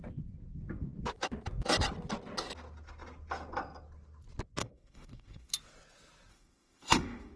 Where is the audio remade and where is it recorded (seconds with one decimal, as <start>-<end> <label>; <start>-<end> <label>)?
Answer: 0.0-4.6 recorded; 4.6-5.5 remade; 5.5-6.3 recorded; 6.3-7.4 remade